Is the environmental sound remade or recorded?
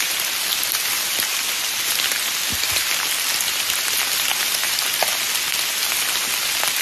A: recorded